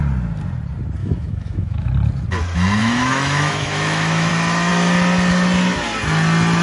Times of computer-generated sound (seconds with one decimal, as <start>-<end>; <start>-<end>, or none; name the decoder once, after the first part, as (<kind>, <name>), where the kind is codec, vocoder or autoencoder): 1.0-1.9 (autoencoder, DAC-VAE); 2.8-4.3